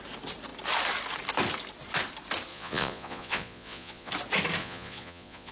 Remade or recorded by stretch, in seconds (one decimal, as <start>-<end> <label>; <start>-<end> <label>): 0.0-2.5 recorded; 2.5-4.1 remade; 4.1-4.6 recorded; 4.6-5.5 remade